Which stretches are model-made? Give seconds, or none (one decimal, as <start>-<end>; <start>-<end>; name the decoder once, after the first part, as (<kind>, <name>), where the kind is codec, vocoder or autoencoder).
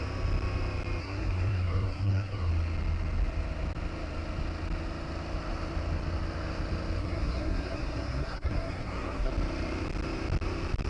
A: 1.0-2.5 (codec, SNAC); 7.0-9.3